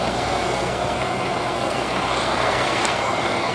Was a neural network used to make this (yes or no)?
yes